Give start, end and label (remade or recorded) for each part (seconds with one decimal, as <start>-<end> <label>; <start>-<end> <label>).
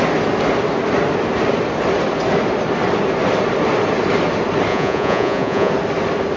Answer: 0.0-4.7 recorded; 4.7-5.7 remade; 5.7-6.4 recorded